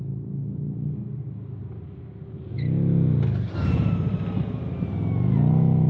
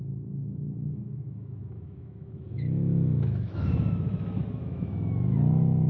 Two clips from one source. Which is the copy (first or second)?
second